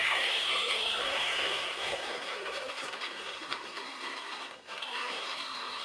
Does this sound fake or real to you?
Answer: fake